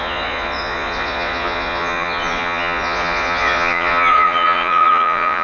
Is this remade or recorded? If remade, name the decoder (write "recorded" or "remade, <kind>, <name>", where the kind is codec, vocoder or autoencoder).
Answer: remade, vocoder, Vocos